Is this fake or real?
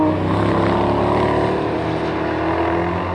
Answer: real